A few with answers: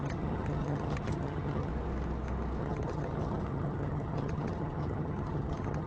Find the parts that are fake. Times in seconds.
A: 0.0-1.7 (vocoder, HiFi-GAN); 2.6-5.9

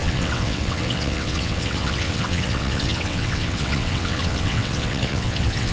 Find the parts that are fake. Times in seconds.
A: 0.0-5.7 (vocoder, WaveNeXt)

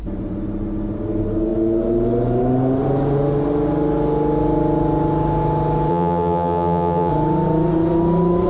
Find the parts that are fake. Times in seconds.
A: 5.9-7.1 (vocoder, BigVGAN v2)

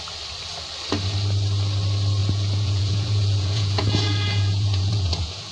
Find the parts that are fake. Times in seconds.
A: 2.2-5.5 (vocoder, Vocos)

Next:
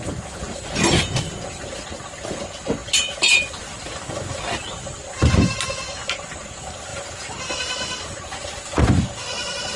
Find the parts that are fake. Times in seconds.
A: none

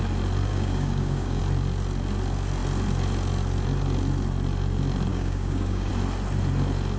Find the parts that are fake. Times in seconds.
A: 0.5-1.4 (codec, DAC); 5.1-5.9

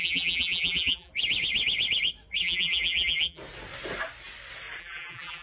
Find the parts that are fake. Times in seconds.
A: 0.0-1.1 (vocoder, BigVGAN v2); 2.4-3.4; 4.8-5.4

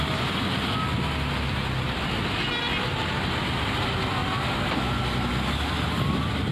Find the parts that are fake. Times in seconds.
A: none